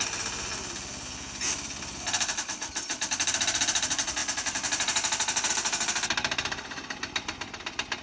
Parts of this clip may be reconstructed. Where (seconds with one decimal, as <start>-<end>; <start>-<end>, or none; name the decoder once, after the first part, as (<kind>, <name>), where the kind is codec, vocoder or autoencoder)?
none